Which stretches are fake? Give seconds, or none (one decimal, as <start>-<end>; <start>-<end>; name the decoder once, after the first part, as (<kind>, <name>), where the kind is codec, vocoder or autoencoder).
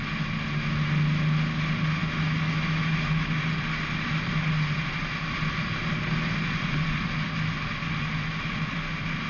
2.0-3.4 (autoencoder, DAC-VAE)